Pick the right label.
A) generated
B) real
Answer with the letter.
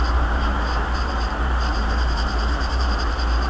A